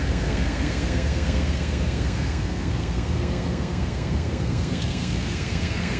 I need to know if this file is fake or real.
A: fake